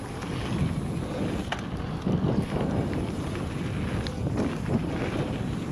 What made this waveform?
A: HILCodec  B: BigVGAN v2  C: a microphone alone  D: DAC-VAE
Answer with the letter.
C